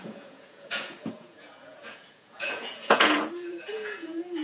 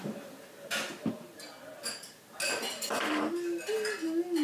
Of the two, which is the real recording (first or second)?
second